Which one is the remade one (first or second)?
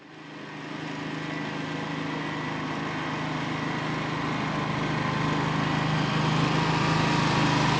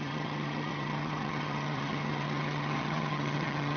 second